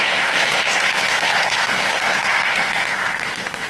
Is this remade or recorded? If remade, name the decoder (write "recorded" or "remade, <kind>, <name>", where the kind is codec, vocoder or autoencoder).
remade, codec, SNAC